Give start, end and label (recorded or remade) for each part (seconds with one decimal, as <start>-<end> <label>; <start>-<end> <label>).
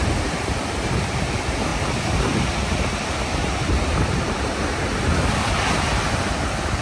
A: 0.0-6.8 recorded